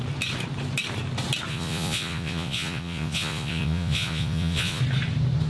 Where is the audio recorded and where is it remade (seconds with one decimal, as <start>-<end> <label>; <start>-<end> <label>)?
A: 0.0-1.5 recorded; 1.5-4.8 remade; 4.8-5.5 recorded